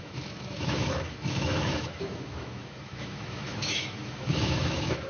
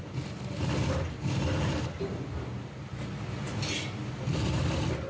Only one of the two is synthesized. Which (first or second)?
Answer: first